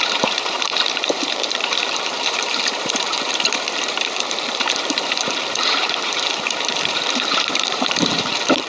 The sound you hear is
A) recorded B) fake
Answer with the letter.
B